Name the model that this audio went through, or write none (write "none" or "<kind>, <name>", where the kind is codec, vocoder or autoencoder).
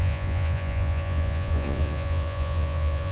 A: vocoder, Vocos